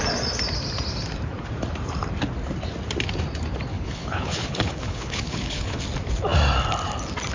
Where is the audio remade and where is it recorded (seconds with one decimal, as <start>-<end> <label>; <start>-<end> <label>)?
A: 0.0-3.7 recorded; 3.7-5.8 remade; 5.8-7.3 recorded

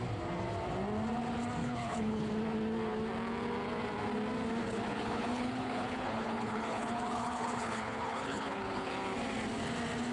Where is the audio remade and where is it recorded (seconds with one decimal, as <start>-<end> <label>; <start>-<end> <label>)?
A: 0.0-1.6 recorded; 1.6-2.3 remade; 2.3-4.6 recorded; 4.6-8.9 remade; 8.9-10.1 recorded

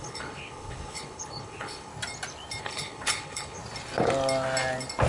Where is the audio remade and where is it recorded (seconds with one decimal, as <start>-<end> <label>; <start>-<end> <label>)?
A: 0.0-1.9 remade; 1.9-2.6 recorded; 2.6-3.6 remade; 3.6-5.1 recorded